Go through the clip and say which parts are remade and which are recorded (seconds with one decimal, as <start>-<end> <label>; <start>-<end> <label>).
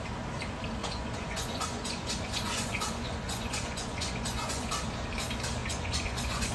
0.0-0.8 recorded; 0.8-4.7 remade; 4.7-5.6 recorded; 5.6-6.5 remade